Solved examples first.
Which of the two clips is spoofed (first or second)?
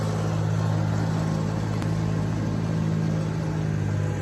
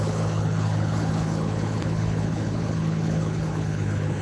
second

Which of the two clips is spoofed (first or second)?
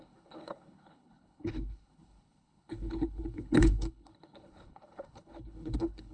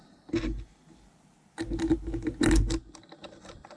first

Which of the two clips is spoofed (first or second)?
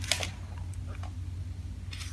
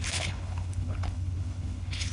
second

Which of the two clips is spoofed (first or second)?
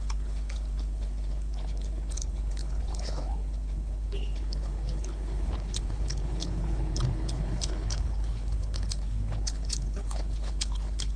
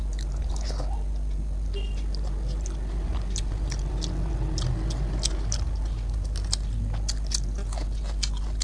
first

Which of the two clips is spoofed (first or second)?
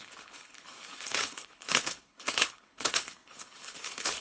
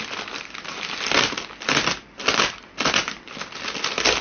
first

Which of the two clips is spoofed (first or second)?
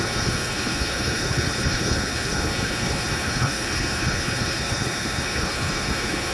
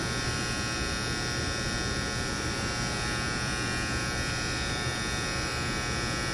first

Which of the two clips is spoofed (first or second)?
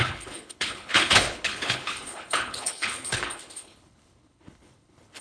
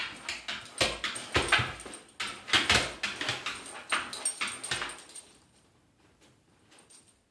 first